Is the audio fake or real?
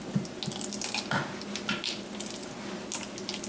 real